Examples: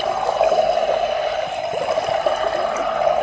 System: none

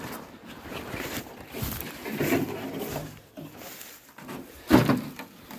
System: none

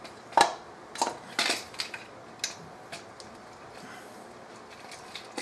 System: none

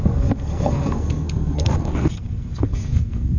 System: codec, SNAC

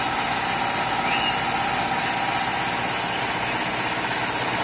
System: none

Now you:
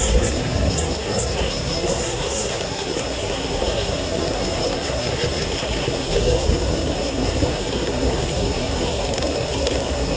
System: codec, SNAC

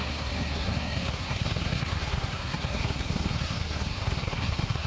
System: codec, SNAC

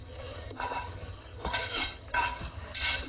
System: vocoder, HiFi-GAN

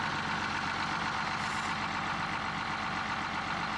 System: none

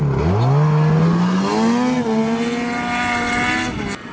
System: none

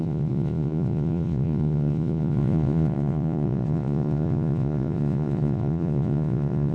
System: vocoder, Vocos